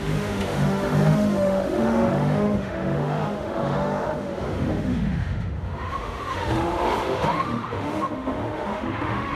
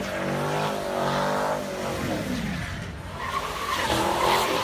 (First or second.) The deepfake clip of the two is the first